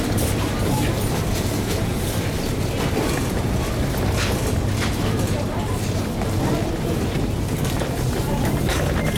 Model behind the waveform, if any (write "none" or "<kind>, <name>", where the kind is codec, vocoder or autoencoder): vocoder, BigVGAN v2